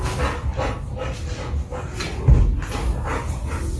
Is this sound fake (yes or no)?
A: no